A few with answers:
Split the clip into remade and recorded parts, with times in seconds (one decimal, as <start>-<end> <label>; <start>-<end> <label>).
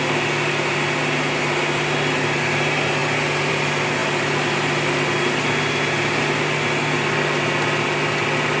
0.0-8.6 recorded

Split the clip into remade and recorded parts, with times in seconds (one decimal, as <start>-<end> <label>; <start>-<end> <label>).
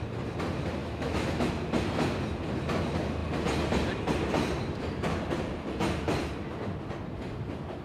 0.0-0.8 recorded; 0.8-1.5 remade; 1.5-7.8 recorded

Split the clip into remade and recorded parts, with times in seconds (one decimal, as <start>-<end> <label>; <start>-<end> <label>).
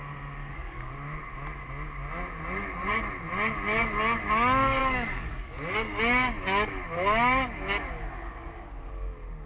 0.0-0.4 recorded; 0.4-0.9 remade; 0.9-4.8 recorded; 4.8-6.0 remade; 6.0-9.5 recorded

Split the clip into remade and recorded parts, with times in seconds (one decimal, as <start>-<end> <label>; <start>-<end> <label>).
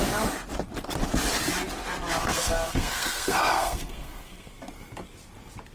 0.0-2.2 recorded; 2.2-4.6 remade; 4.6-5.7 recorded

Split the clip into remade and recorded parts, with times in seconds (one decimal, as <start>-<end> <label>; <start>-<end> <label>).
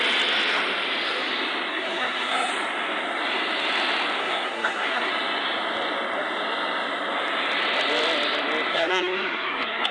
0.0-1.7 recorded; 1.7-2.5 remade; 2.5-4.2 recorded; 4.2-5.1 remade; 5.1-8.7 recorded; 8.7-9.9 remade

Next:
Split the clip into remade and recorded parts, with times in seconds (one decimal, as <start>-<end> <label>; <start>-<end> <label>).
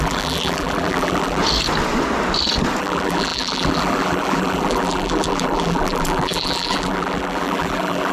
0.0-1.4 remade; 1.4-2.8 recorded; 2.8-8.1 remade